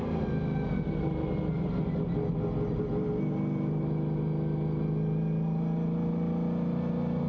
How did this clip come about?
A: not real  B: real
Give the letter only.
B